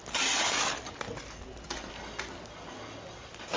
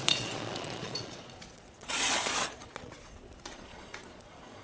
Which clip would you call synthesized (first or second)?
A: second